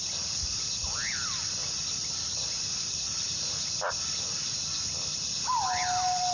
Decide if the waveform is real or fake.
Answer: real